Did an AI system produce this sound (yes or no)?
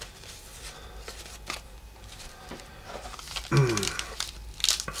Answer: no